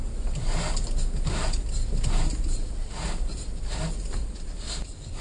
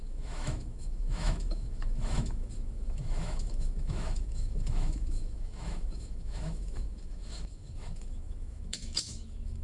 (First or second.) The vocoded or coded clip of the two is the second